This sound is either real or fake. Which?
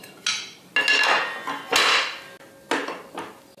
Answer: real